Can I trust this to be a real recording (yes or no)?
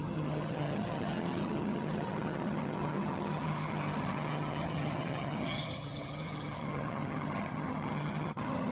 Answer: no